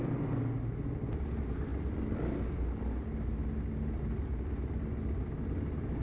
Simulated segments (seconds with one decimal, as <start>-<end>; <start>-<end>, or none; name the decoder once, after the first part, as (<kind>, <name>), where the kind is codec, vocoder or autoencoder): none